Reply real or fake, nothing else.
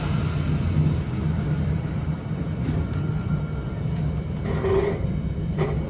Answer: real